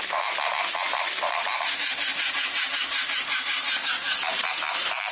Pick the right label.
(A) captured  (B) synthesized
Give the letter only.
A